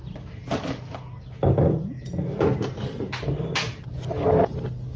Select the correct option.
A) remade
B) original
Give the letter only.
B